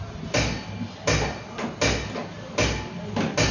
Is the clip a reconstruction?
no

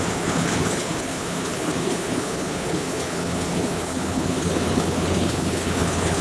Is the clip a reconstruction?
yes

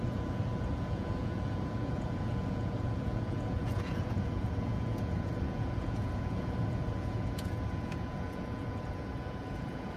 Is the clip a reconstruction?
yes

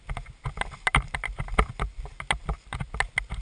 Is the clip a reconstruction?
no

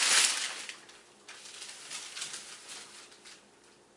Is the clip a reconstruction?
no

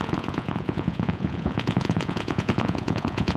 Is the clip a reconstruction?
yes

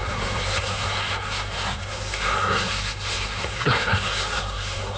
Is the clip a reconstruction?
yes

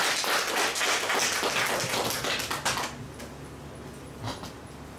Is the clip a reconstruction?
no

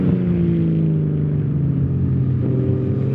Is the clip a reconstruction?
no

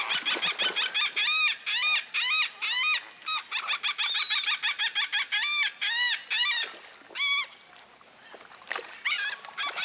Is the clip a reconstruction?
no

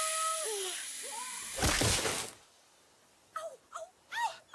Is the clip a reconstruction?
no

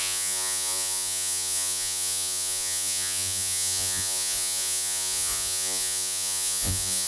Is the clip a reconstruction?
yes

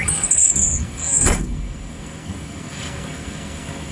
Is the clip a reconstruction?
yes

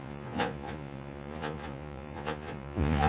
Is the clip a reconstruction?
yes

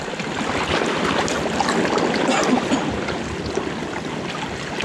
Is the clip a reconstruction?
no